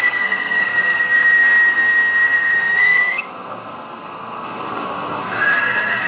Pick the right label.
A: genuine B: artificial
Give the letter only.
B